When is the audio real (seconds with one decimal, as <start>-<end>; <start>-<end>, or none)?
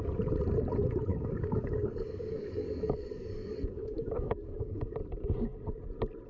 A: 0.0-1.1; 4.9-6.3